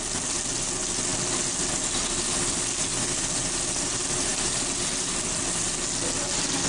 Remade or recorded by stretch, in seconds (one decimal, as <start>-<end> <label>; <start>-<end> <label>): 0.0-6.7 recorded